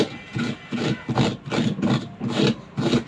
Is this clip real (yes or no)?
yes